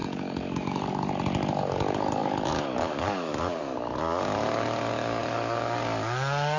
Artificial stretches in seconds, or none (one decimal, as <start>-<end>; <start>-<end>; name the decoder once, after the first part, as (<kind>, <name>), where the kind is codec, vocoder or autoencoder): 0.0-6.6 (codec, DAC)